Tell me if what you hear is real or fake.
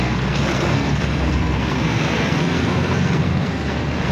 fake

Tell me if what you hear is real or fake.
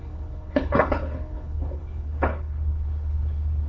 fake